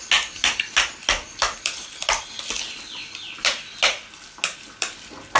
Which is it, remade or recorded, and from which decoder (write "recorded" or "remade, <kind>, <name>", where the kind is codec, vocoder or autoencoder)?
recorded